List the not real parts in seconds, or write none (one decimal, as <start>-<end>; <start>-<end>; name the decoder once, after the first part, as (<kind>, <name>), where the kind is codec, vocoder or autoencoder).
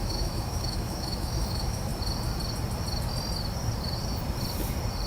0.0-1.9 (autoencoder, DAC-VAE)